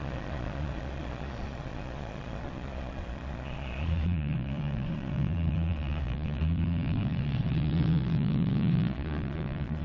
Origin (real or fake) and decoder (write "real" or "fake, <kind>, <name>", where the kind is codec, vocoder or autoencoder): fake, vocoder, Vocos